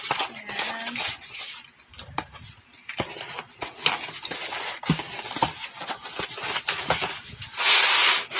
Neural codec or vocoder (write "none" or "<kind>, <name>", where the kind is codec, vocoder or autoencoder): none